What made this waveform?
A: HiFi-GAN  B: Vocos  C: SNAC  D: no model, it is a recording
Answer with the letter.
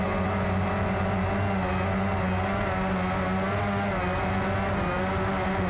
D